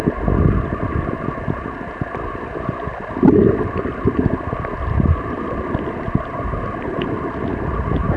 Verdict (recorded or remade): recorded